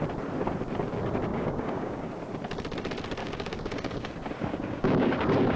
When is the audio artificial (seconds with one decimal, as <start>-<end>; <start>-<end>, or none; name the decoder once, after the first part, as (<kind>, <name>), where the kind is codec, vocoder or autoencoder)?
1.3-2.1 (codec, DAC); 3.2-4.1; 4.5-5.6